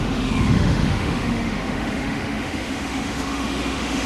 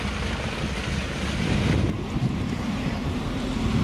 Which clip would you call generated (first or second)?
first